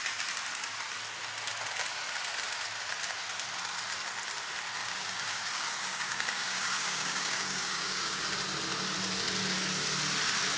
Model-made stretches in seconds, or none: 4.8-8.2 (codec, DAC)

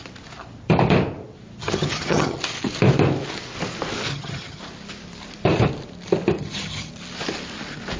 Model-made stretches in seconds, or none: 1.6-2.4 (vocoder, HiFi-GAN); 4.1-4.6; 6.4-6.9

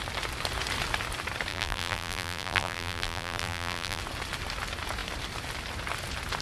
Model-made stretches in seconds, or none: 1.5-4.0 (vocoder, BigVGAN v2)

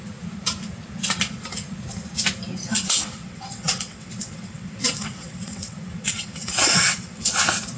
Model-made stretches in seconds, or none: 2.6-7.3 (vocoder, WaveNeXt)

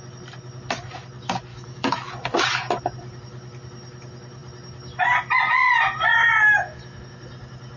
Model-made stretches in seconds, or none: 1.5-2.1 (autoencoder, DAC-VAE)

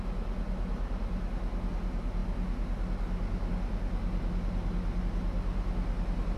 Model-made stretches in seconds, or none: none

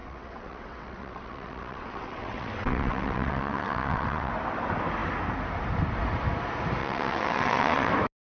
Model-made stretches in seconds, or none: 0.0-4.3 (vocoder, WaveNeXt); 6.8-7.9